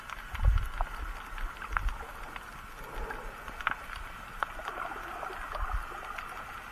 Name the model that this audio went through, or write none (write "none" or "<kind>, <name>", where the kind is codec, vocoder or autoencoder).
none